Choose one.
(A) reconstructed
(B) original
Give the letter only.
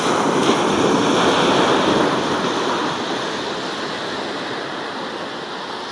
B